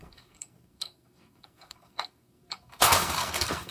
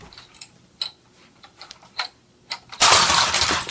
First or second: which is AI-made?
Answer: first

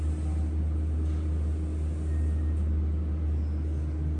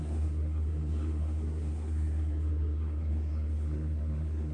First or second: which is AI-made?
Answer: second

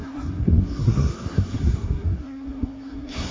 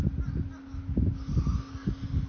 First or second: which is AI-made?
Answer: first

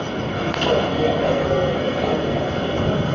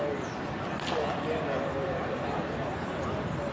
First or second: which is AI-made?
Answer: first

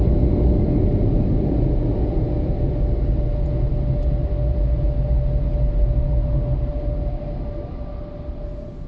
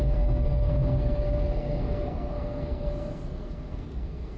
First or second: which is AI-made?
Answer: second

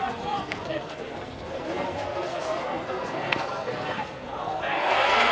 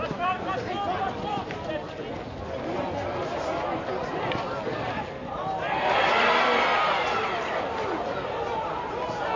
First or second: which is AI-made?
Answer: first